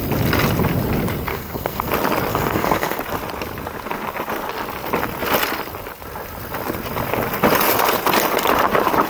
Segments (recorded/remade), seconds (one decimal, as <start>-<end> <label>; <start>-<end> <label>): 0.0-1.3 recorded; 1.3-1.9 remade; 1.9-2.3 recorded; 2.3-3.0 remade; 3.0-9.1 recorded